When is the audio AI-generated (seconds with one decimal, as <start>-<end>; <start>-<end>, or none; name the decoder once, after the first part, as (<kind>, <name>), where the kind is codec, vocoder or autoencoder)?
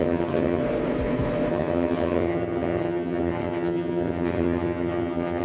0.0-0.6 (vocoder, HiFi-GAN); 1.5-5.4